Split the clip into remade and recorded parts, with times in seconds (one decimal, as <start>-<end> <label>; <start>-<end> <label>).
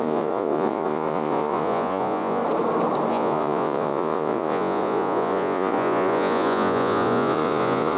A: 0.0-2.4 remade; 2.4-3.1 recorded; 3.1-8.0 remade